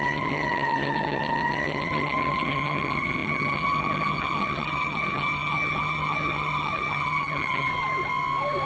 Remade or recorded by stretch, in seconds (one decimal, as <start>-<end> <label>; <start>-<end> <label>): 0.0-7.7 remade; 7.7-8.7 recorded